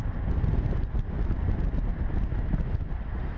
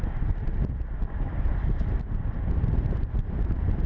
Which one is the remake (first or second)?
second